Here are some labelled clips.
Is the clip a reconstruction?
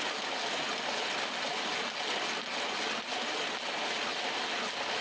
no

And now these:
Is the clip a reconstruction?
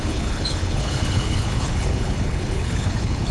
yes